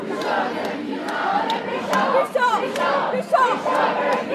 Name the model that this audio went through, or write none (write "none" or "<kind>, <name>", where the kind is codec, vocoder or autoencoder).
none